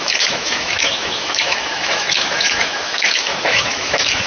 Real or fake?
fake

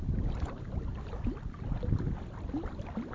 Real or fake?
real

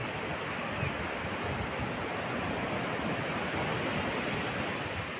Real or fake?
real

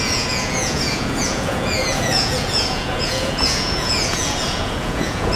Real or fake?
fake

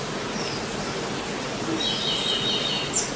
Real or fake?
real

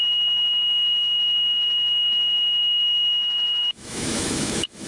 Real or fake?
fake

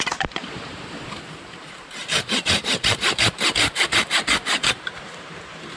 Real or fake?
fake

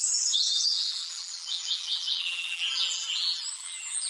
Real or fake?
fake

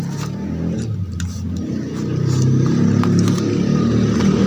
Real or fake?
real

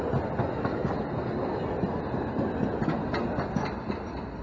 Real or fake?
real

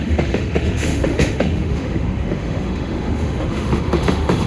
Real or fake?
fake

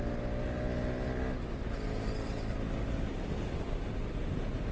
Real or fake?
real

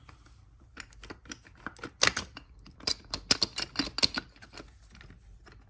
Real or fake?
real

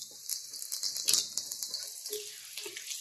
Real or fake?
real